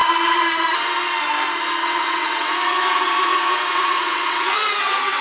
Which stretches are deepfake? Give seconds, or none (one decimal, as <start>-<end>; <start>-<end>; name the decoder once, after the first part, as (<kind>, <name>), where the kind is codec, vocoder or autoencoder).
1.8-5.2 (vocoder, WaveNeXt)